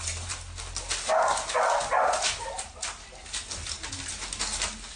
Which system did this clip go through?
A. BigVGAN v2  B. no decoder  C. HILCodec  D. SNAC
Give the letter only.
B